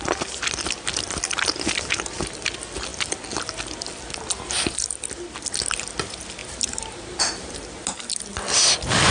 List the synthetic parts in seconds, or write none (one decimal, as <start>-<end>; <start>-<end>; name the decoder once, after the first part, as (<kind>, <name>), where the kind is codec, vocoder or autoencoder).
6.4-7.3 (vocoder, BigVGAN v2)